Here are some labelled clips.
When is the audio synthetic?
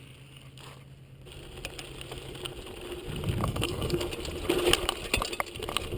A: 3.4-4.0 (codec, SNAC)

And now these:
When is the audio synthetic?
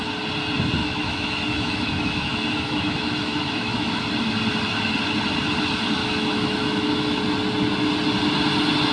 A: 0.8-4.0 (autoencoder, DAC-VAE); 6.0-7.2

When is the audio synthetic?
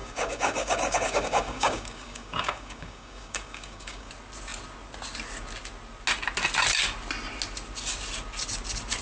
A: 0.0-4.1 (codec, DAC)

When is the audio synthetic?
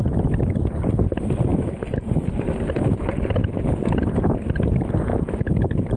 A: none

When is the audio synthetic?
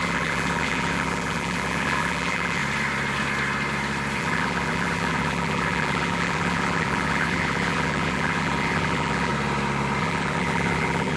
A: 0.0-2.6 (vocoder, BigVGAN v2); 4.2-9.3; 10.0-11.2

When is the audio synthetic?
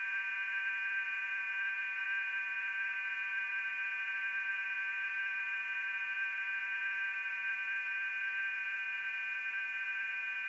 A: 0.0-10.5 (vocoder, BigVGAN v2)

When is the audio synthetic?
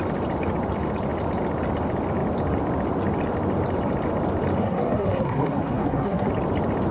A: 4.6-6.3 (codec, SNAC)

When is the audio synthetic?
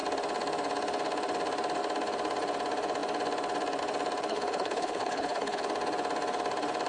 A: 4.3-5.6 (codec, HILCodec)